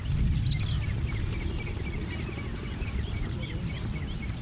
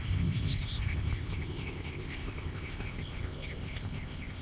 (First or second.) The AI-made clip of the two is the second